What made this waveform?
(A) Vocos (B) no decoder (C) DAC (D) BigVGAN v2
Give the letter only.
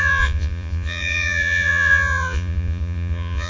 A